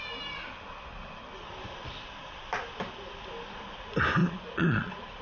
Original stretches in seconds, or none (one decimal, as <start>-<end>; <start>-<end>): 0.0-0.9; 1.5-4.2